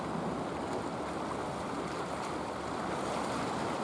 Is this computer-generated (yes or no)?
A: no